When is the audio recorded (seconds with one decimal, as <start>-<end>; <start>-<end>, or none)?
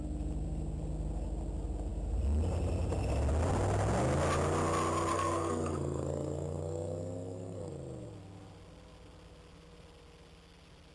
0.0-5.1; 7.7-10.9